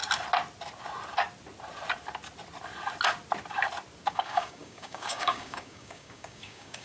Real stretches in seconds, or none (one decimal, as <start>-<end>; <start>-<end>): 0.0-4.1